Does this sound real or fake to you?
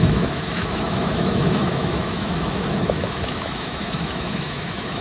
fake